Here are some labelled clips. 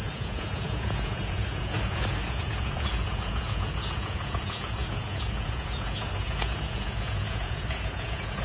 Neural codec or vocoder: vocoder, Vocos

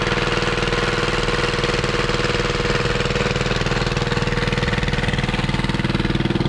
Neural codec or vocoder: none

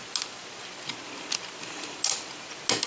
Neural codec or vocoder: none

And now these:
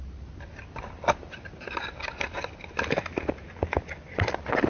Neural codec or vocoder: none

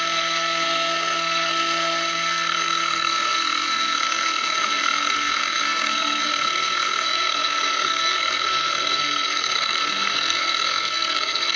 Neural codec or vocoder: codec, SNAC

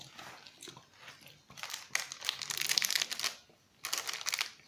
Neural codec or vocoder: none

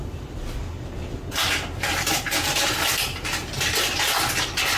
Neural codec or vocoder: none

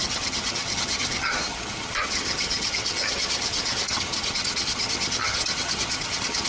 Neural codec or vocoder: vocoder, HiFi-GAN